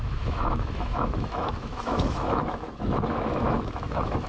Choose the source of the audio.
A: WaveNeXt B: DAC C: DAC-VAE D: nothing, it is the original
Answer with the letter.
C